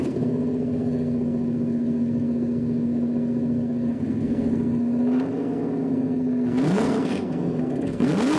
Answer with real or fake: fake